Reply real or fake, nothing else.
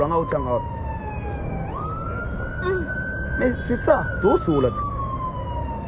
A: real